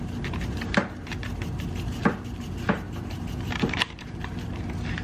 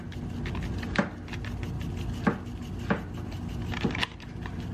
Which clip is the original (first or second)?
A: second